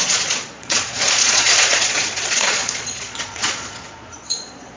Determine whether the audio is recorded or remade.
remade